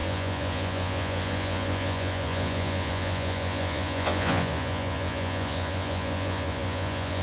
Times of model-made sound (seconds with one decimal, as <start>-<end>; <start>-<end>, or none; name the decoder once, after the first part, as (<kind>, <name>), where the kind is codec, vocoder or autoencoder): 0.0-7.2 (vocoder, Vocos)